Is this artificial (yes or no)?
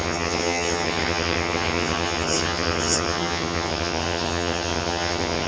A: yes